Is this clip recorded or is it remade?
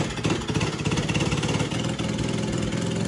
recorded